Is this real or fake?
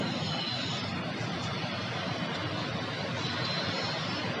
real